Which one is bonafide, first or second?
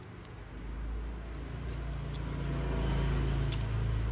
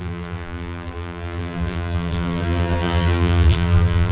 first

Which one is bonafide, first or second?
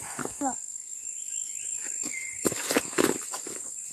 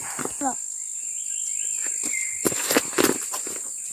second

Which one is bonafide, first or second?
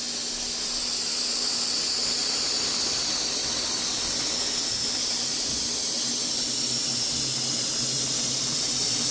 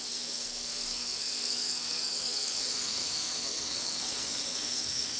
first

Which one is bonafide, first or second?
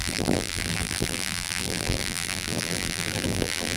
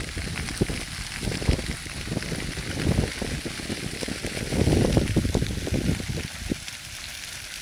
second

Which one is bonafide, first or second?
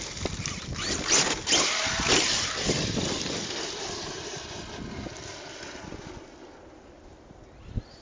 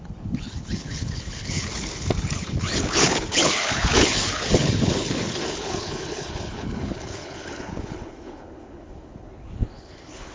first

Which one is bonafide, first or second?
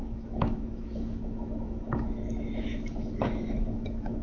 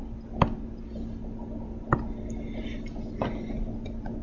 second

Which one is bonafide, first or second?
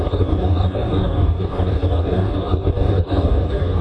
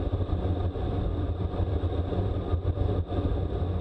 second